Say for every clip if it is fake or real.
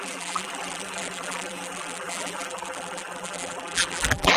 fake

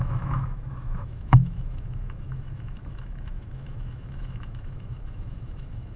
fake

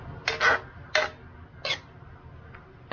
real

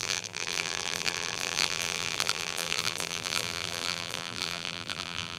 fake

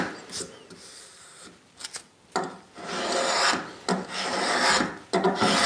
real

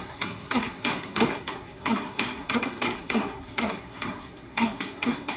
fake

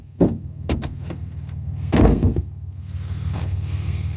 fake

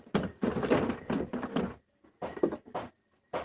real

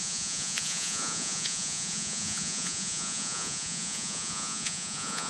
fake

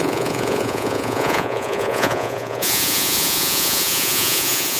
fake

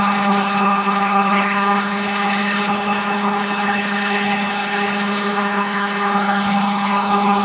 fake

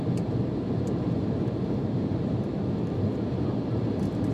fake